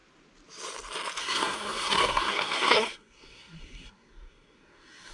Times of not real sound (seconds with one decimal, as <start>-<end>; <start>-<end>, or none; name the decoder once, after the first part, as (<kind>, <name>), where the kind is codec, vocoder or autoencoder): 1.2-5.1 (codec, SNAC)

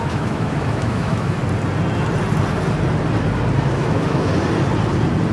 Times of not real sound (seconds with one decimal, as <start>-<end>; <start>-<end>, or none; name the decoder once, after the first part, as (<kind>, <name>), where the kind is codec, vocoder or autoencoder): 0.0-1.4 (autoencoder, DAC-VAE); 3.7-4.3

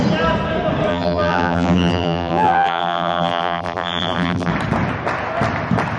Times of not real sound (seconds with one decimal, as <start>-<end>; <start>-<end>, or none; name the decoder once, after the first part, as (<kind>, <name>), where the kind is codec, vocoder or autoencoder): 0.9-4.5 (vocoder, BigVGAN v2)

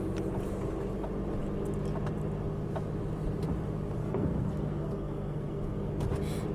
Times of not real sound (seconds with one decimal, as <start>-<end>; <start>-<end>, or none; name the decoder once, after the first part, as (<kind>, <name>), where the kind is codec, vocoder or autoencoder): 4.0-5.9 (codec, SNAC)

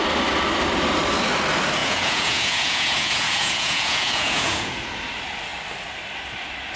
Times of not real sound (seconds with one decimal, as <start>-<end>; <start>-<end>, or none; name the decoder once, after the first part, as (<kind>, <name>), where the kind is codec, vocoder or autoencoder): 1.8-4.8 (vocoder, Vocos)

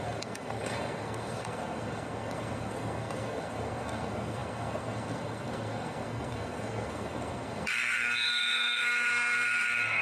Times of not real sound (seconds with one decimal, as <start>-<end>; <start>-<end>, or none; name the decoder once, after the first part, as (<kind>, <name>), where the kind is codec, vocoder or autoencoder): 0.0-10.0 (codec, SNAC)

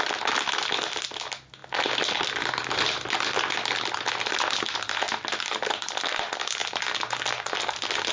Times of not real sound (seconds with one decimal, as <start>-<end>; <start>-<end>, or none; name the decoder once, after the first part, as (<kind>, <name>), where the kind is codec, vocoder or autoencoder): none